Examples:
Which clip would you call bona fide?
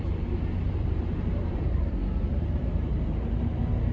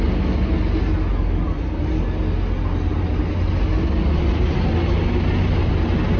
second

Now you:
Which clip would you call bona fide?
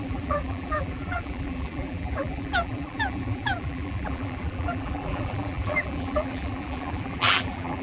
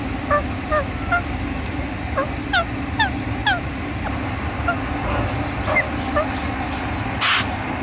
second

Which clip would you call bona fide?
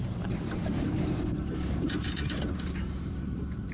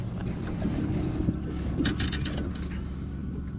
second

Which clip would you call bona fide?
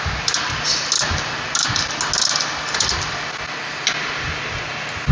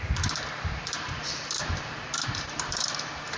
first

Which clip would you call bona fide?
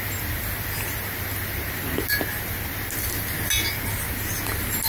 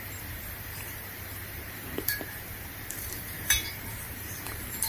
first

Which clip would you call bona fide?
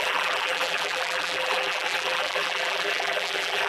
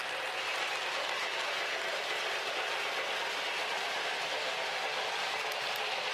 second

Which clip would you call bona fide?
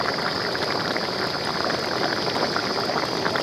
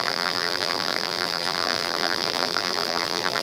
first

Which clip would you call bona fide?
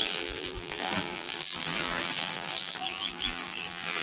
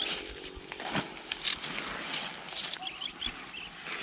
second